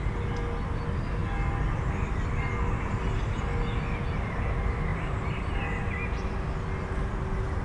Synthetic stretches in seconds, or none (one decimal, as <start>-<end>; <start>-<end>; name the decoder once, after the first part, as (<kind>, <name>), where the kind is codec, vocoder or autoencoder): none